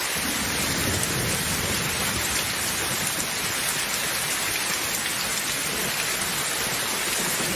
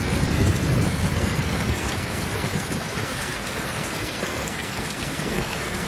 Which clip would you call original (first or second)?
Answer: first